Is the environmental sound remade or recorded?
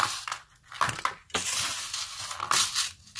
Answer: recorded